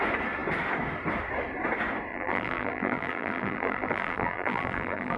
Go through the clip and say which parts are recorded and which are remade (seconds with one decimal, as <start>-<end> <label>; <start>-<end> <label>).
0.0-2.1 recorded; 2.1-5.2 remade